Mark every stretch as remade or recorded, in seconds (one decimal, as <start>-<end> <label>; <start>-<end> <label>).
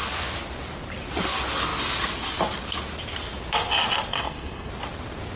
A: 0.0-4.1 recorded; 4.1-4.7 remade; 4.7-5.4 recorded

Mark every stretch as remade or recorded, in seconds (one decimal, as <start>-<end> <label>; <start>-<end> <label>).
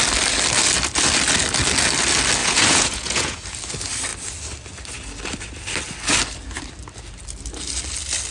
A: 0.0-2.4 recorded; 2.4-3.4 remade; 3.4-8.3 recorded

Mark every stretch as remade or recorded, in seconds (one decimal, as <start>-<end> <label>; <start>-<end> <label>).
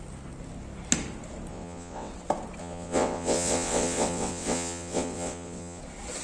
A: 0.0-1.5 recorded; 1.5-2.1 remade; 2.1-2.6 recorded; 2.6-5.8 remade; 5.8-6.2 recorded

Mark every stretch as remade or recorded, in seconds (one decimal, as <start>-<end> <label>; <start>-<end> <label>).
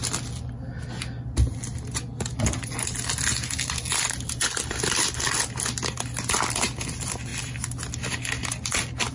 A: 0.0-9.1 recorded